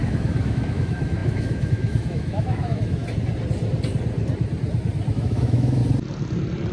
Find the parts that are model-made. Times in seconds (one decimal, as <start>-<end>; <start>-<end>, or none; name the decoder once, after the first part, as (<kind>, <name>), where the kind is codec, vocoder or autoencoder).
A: 0.0-3.0 (autoencoder, DAC-VAE); 5.1-5.8